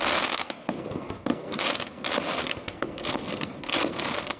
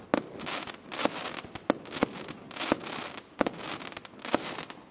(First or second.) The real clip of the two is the second